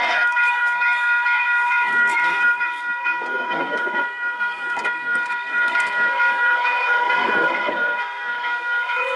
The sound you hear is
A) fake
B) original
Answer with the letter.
A